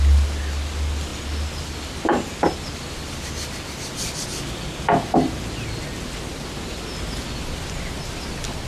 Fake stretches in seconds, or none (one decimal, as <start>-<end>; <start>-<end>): none